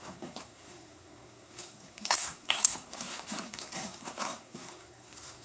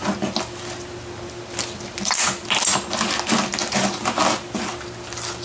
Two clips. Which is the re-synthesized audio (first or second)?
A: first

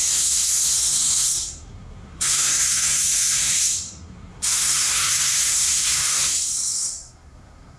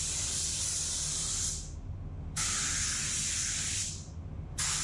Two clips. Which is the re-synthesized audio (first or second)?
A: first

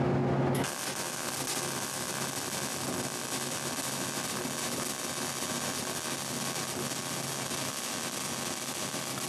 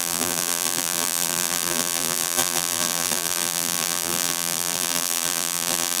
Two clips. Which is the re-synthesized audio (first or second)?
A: second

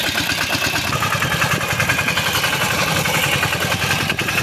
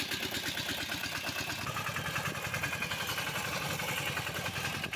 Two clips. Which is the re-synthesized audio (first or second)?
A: first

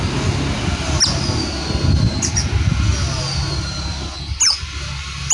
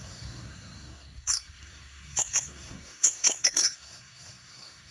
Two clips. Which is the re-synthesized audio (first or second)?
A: second